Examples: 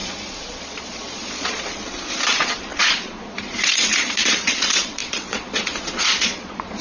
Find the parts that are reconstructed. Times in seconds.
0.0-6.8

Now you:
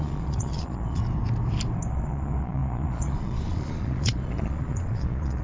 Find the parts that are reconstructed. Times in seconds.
0.0-1.0; 1.9-5.4

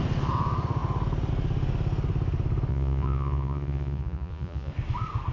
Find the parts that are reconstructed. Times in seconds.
2.7-4.7